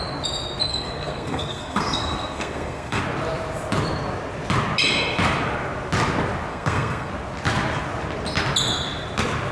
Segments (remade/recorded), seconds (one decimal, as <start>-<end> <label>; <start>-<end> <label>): 0.0-0.7 recorded; 0.7-3.0 remade; 3.0-6.5 recorded; 6.5-7.1 remade; 7.1-9.5 recorded